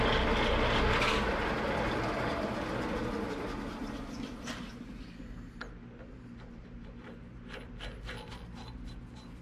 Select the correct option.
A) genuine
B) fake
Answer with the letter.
A